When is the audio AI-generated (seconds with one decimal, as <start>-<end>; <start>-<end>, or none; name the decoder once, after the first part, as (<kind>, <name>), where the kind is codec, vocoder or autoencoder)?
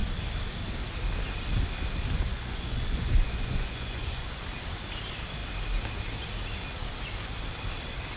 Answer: 2.3-4.4 (vocoder, Vocos)